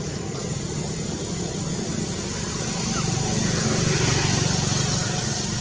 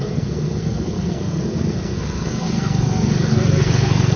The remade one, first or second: second